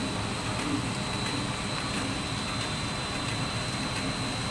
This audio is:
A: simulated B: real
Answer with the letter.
B